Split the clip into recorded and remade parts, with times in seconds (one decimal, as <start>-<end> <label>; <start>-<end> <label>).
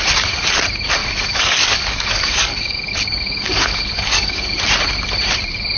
0.0-1.0 recorded; 1.0-4.5 remade; 4.5-5.8 recorded